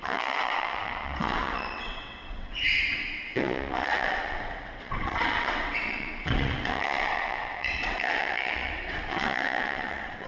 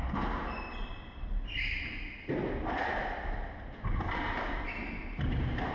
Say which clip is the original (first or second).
second